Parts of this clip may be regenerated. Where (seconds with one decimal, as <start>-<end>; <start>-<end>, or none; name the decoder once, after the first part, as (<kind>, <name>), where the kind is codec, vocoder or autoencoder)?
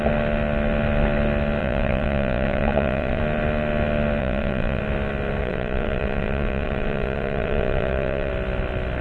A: 1.6-3.2 (vocoder, WaveNeXt); 4.2-4.8; 5.4-8.3